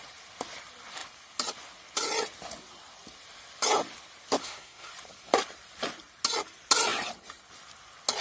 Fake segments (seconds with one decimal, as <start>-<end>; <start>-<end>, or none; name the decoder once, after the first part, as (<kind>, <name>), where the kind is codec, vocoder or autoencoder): 4.4-4.9 (codec, SNAC)